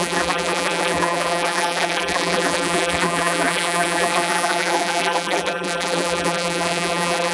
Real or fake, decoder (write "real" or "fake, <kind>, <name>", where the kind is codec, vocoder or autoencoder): fake, vocoder, BigVGAN v2